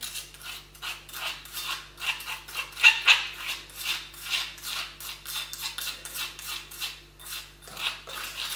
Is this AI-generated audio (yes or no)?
no